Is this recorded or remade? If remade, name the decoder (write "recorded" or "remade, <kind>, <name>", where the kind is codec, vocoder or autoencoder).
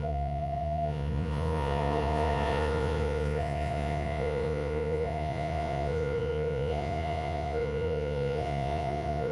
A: remade, vocoder, Vocos